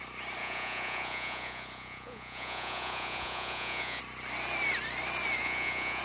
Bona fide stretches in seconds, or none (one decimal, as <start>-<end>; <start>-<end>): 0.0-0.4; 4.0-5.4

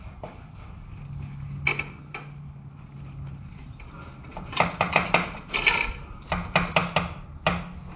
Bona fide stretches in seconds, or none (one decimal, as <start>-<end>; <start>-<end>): 0.0-4.3; 6.3-8.0

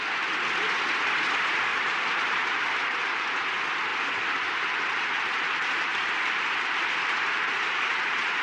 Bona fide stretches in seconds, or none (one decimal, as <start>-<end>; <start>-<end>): 0.0-1.7; 3.4-3.9

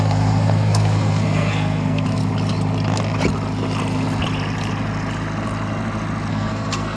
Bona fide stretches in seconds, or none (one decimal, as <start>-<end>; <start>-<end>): 2.2-6.3

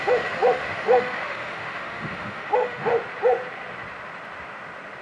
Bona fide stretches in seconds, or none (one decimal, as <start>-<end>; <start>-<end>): 2.9-5.0

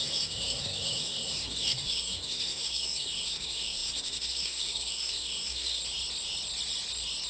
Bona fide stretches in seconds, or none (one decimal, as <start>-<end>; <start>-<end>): 5.8-7.3